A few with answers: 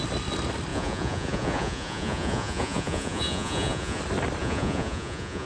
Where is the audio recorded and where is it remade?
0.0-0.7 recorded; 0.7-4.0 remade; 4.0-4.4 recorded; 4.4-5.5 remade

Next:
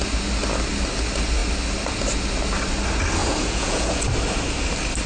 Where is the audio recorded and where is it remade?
0.0-3.2 recorded; 3.2-4.1 remade; 4.1-5.1 recorded